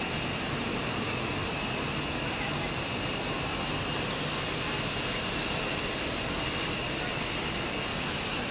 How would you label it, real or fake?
real